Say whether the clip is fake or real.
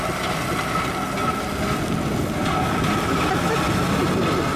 real